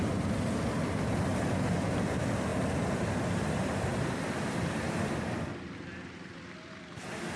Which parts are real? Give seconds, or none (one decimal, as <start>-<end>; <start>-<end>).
0.0-3.9; 6.8-7.4